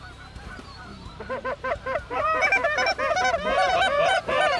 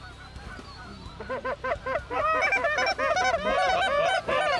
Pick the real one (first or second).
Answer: second